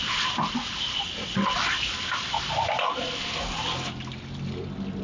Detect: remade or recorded recorded